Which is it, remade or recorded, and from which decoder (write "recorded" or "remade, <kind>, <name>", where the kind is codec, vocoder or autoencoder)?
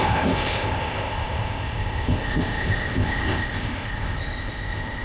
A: remade, codec, ZipCodec